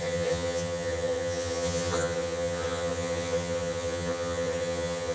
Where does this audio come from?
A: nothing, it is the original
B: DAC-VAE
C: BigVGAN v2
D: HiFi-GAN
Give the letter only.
D